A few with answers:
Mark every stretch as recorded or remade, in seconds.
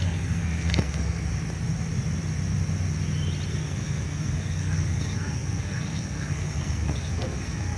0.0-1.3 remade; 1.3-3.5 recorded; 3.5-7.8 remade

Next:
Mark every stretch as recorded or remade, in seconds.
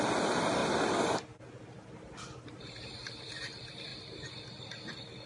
0.0-5.3 remade